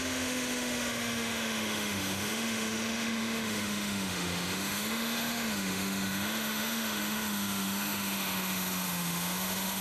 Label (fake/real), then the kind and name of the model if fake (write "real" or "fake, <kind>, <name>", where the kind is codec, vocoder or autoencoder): fake, autoencoder, DAC-VAE